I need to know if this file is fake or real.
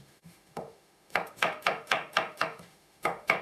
fake